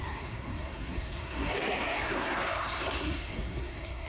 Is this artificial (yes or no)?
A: yes